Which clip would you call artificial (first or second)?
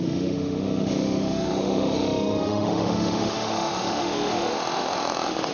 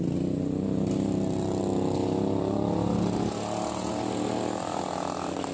first